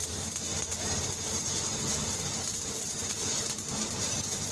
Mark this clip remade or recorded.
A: remade